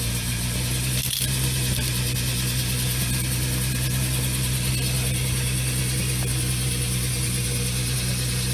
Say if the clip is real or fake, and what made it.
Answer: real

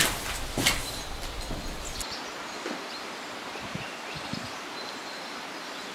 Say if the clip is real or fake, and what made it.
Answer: real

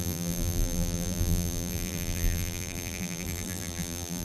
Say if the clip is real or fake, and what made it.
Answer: fake, vocoder, BigVGAN v2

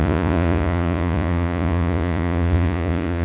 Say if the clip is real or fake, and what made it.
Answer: fake, vocoder, Vocos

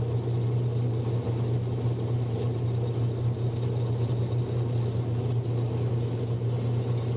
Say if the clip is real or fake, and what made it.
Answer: real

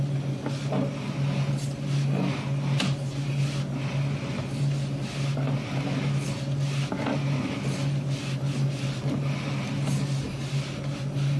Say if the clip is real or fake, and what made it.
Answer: real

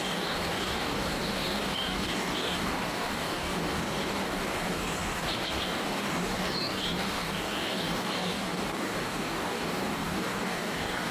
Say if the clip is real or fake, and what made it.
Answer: fake, codec, DAC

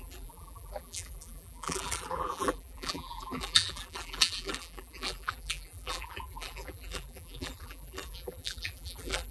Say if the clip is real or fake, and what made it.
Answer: fake, vocoder, BigVGAN v2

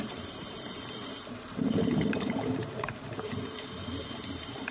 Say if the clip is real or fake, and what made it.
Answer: fake, vocoder, BigVGAN v2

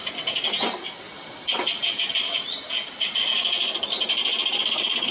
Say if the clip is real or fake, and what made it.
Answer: real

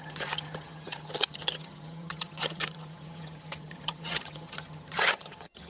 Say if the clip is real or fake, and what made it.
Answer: fake, vocoder, HiFi-GAN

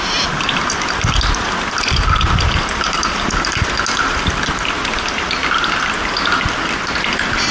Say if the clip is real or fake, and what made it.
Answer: real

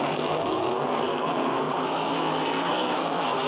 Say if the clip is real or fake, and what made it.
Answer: fake, codec, SNAC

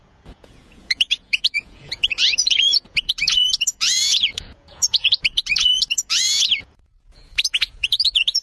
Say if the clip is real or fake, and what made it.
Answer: fake, vocoder, Vocos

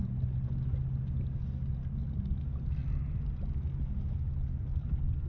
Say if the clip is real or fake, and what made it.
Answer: real